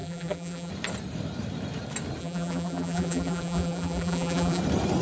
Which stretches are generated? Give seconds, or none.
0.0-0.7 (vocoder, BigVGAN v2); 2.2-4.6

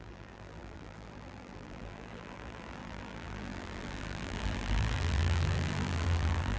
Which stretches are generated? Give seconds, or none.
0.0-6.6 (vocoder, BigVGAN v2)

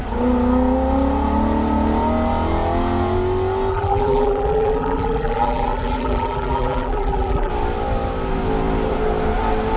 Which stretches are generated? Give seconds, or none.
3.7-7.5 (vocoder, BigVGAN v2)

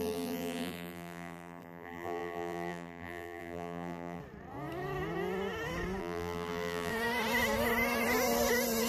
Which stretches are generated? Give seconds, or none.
0.0-4.2 (vocoder, BigVGAN v2); 6.0-6.9

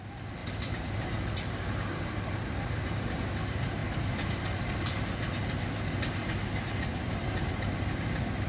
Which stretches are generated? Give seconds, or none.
0.4-3.1 (vocoder, BigVGAN v2); 6.9-7.5